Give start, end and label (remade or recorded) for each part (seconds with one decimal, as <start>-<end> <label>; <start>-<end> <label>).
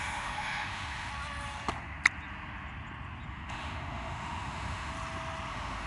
0.0-1.1 remade; 1.1-3.3 recorded; 3.3-4.9 remade; 4.9-5.5 recorded; 5.5-5.9 remade